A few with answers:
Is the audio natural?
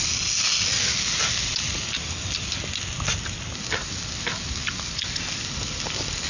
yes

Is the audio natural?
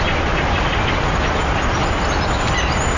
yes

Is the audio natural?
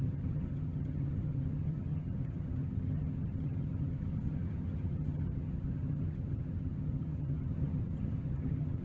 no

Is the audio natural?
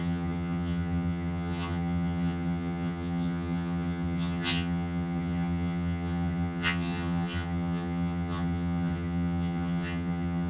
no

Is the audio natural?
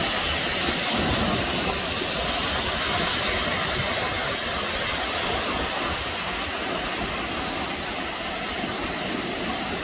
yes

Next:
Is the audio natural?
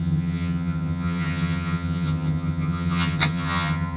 no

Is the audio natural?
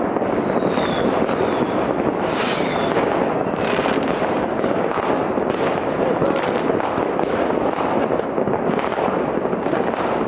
yes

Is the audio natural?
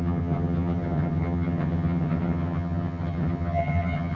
no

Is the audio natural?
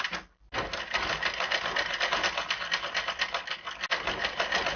yes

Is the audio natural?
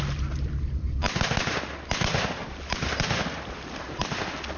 yes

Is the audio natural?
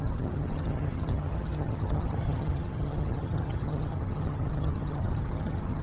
no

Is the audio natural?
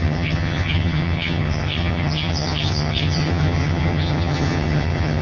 no